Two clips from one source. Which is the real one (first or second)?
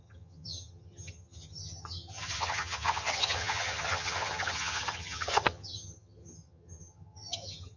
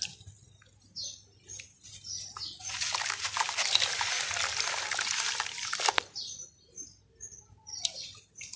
second